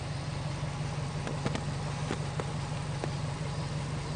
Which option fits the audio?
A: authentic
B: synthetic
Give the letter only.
A